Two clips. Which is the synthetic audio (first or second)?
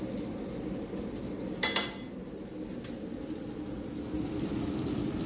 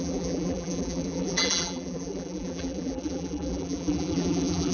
second